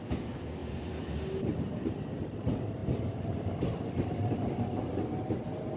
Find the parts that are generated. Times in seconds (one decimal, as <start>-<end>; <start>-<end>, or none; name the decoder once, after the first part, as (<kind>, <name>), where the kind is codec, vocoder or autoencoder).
none